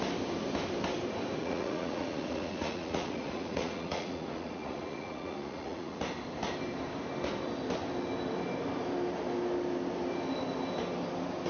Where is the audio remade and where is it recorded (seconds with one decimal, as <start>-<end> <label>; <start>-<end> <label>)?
0.0-1.4 recorded; 1.4-6.0 remade; 6.0-11.5 recorded